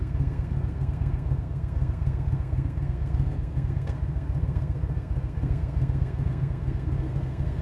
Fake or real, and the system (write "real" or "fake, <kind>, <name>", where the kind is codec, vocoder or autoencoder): fake, codec, SNAC